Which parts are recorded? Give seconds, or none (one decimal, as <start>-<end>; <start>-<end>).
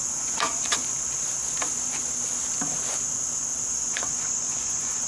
0.8-3.7